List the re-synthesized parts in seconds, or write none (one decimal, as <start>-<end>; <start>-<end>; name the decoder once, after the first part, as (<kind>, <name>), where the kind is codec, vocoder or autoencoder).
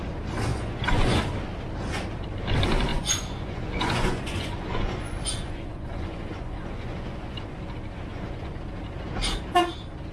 0.5-1.2 (vocoder, Vocos); 2.9-7.6; 8.1-8.6